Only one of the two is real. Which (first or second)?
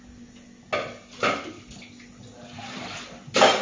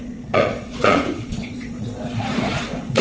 first